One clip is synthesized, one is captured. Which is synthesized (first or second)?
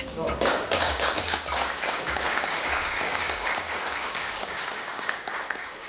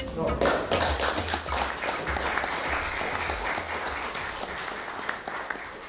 first